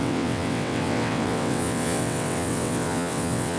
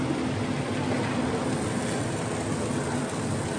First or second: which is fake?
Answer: first